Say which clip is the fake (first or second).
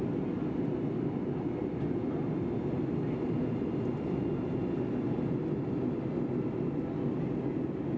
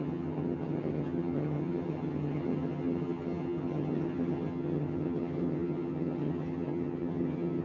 second